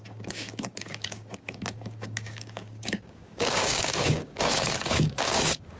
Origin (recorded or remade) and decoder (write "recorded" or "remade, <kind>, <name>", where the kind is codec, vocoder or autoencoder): remade, codec, DAC